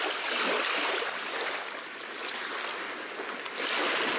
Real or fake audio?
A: real